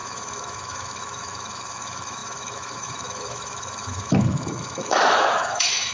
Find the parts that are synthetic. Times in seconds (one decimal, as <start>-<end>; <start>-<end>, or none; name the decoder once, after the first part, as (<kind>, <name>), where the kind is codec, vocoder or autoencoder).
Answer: 0.0-5.9 (autoencoder, DAC-VAE)